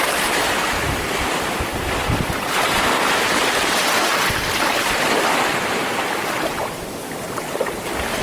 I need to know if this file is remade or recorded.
recorded